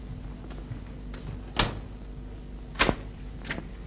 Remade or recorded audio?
recorded